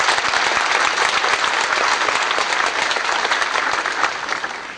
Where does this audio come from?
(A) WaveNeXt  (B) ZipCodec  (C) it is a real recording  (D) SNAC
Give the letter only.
C